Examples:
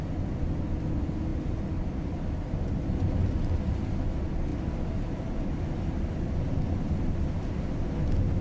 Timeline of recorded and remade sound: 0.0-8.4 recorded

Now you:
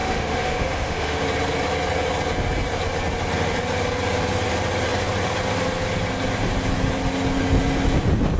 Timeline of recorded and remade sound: 0.0-1.2 remade; 1.2-8.4 recorded

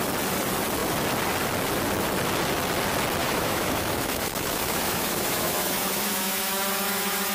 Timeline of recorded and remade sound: 0.0-3.2 recorded; 3.2-7.3 remade

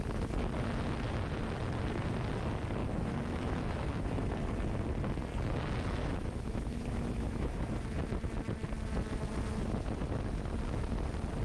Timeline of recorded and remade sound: 0.0-2.8 recorded; 2.8-4.3 remade; 4.3-6.0 recorded; 6.0-7.7 remade; 7.7-11.4 recorded

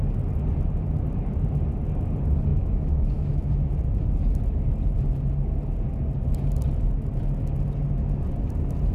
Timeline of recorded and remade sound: 0.0-2.5 recorded; 2.5-3.7 remade; 3.7-8.9 recorded

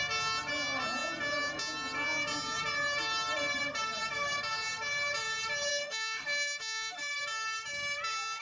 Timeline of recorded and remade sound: 0.0-5.7 recorded; 5.7-7.2 remade; 7.2-8.4 recorded

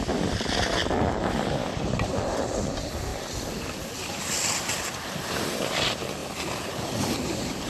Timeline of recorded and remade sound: 0.0-7.7 recorded